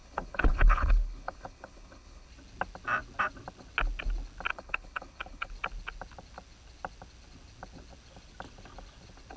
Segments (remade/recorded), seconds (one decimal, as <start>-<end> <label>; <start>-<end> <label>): 0.0-2.3 remade; 2.3-4.5 recorded; 4.5-5.5 remade; 5.5-9.4 recorded